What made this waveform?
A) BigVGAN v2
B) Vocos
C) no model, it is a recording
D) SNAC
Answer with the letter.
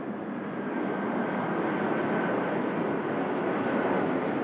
C